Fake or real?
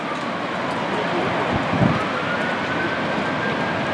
real